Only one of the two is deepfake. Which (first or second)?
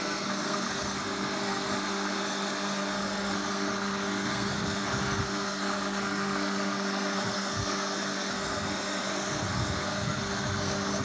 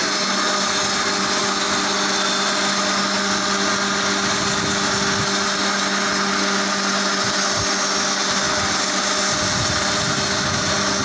first